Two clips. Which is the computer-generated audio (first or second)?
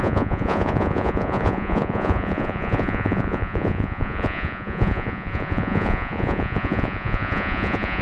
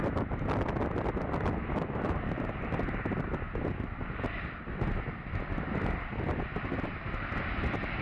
first